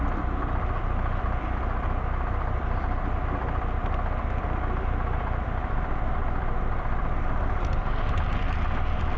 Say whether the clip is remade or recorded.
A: recorded